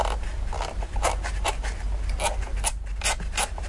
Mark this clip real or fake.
real